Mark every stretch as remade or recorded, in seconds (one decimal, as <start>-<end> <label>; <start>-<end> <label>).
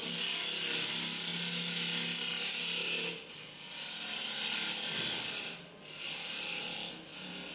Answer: 0.0-7.5 recorded